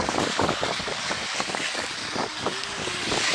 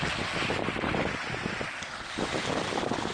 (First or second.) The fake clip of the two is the first